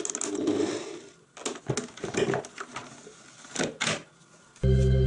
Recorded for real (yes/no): yes